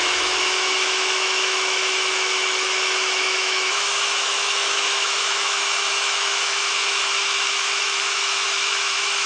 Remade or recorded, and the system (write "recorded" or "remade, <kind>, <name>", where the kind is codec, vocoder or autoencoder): remade, autoencoder, DAC-VAE